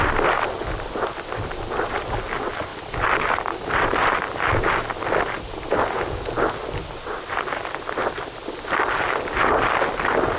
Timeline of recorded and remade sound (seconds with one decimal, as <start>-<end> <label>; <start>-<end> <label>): 0.0-10.4 recorded